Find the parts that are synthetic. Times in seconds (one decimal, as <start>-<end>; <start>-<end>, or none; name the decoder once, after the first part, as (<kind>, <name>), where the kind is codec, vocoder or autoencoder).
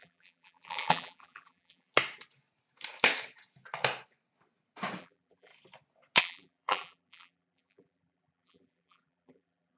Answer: 0.0-1.9 (vocoder, BigVGAN v2); 5.0-5.5; 6.2-9.8